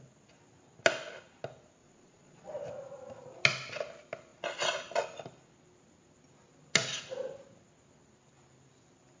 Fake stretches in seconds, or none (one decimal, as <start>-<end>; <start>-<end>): 1.8-2.6